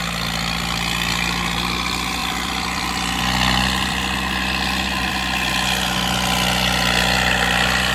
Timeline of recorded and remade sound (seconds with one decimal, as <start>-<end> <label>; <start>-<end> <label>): 0.0-2.2 recorded; 2.2-5.1 remade; 5.1-7.9 recorded